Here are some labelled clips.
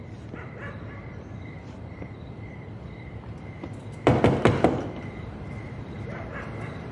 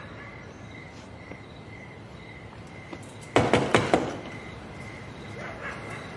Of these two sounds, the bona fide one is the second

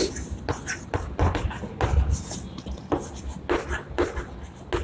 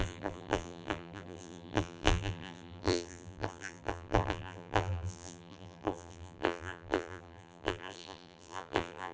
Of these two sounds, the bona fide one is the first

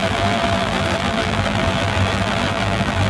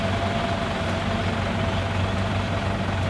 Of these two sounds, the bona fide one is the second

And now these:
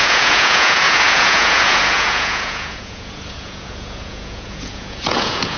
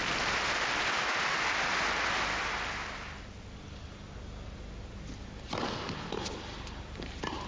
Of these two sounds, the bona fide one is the second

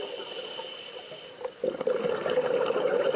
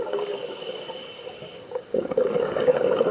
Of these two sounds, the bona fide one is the first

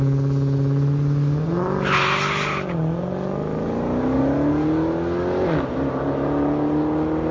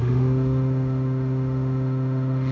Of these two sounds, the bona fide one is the first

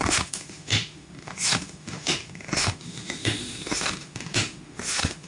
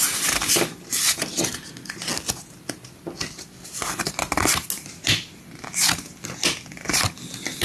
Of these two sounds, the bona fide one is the second